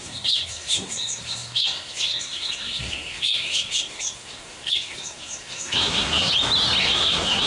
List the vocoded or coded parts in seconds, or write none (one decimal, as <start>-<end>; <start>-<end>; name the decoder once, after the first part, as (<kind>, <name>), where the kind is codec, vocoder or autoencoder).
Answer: 0.0-6.3 (codec, SNAC); 6.8-7.5